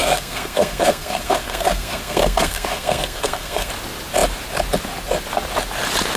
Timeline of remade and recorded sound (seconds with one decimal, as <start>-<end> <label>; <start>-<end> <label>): 0.0-3.7 remade; 3.7-6.2 recorded